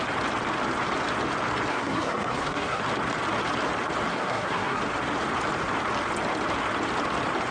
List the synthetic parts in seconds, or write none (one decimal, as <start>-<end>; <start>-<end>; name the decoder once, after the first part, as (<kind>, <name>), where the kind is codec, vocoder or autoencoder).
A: 1.7-2.8 (codec, SNAC); 4.1-4.8